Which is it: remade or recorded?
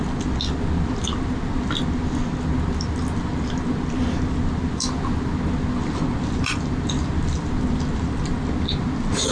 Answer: recorded